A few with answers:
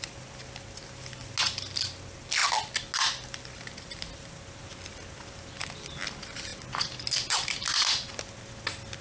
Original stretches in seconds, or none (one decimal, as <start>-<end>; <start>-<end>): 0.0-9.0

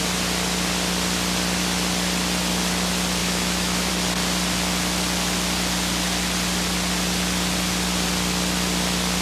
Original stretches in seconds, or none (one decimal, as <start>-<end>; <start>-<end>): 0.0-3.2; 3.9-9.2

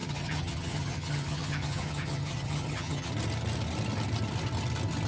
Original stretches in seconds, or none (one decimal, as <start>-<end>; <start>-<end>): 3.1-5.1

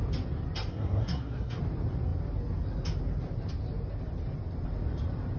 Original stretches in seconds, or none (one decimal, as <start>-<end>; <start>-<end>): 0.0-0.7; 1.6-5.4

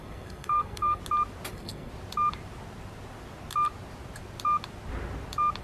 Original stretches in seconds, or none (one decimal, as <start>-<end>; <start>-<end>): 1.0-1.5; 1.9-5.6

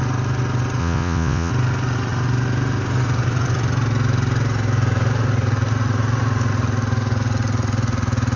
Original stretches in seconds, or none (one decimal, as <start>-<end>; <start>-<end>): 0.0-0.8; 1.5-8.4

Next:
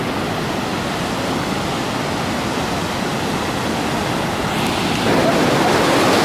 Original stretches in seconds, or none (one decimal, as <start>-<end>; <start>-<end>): 0.0-6.2